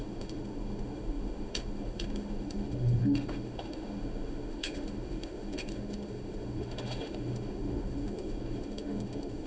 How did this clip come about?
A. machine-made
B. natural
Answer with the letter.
A